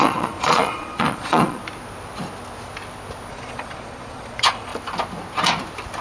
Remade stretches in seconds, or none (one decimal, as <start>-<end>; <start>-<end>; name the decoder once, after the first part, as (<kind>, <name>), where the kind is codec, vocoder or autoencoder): 0.0-1.6 (vocoder, Vocos); 3.3-4.7